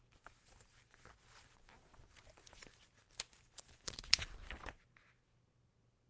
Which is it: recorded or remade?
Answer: remade